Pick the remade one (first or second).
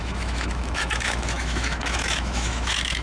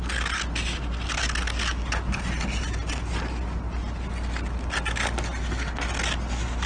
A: first